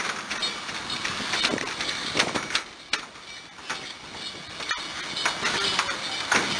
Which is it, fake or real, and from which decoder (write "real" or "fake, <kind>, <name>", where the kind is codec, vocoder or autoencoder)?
real